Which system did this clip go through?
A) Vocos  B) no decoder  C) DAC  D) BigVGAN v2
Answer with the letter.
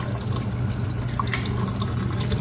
B